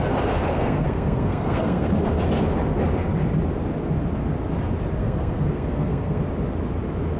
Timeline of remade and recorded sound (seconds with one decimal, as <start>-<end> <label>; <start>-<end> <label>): 0.0-0.5 recorded; 0.5-1.9 remade; 1.9-5.0 recorded; 5.0-6.2 remade; 6.2-7.2 recorded